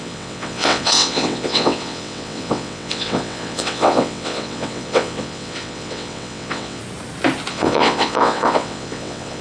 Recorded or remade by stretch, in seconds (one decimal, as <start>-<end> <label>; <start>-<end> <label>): 0.0-6.8 remade; 6.8-7.5 recorded; 7.5-9.4 remade